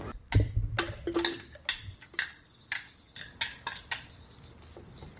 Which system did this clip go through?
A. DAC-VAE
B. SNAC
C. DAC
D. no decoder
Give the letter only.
D